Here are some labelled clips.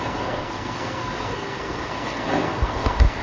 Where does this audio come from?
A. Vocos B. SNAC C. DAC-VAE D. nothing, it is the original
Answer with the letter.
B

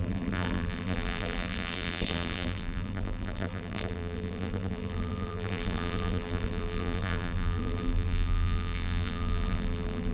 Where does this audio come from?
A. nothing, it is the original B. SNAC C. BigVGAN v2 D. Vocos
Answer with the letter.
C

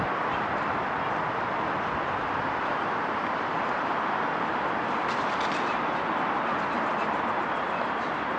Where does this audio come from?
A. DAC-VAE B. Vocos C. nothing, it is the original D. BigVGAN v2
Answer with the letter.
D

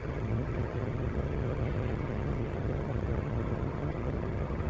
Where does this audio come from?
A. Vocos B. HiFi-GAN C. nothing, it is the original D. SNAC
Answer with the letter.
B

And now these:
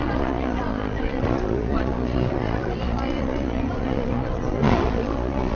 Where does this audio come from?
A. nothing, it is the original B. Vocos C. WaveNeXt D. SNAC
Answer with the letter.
B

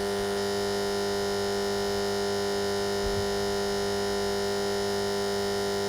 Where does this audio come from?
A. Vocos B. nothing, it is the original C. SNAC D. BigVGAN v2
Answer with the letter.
B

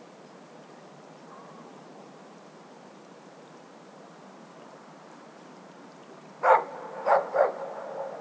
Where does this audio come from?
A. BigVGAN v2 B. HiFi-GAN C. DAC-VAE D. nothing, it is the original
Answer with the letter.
A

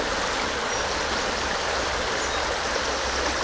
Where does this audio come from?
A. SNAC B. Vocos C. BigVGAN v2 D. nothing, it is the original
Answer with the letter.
D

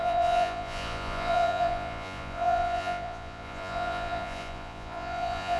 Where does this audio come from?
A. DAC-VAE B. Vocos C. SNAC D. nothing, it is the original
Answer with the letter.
B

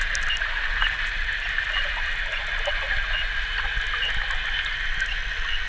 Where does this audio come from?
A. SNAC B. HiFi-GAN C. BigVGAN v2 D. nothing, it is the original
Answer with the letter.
D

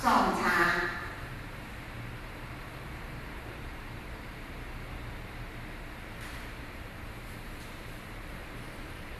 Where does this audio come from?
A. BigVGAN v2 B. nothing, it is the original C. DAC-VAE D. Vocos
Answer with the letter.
A